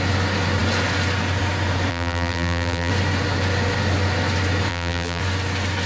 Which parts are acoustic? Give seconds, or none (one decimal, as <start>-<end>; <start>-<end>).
0.0-1.9; 2.9-4.7; 5.2-5.9